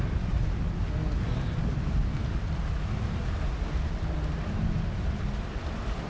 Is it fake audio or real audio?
real